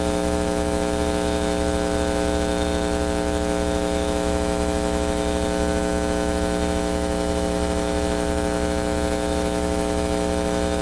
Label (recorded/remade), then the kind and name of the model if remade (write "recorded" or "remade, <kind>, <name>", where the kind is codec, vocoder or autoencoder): remade, autoencoder, DAC-VAE